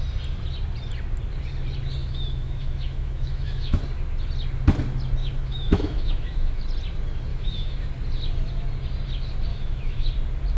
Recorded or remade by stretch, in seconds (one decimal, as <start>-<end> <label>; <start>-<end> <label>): 0.0-2.0 recorded; 2.0-3.8 remade; 3.8-5.2 recorded; 5.2-6.6 remade; 6.6-7.3 recorded; 7.3-7.9 remade; 7.9-9.5 recorded; 9.5-10.1 remade; 10.1-10.6 recorded